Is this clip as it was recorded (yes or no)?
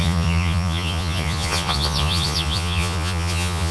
no